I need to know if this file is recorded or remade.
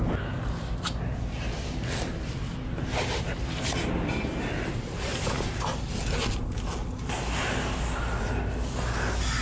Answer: recorded